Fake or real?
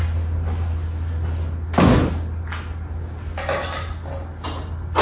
real